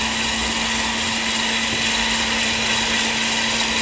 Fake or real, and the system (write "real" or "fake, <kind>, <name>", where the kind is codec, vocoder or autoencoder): real